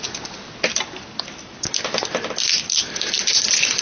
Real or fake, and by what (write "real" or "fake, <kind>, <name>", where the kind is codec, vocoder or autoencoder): real